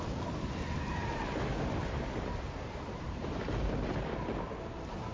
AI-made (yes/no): no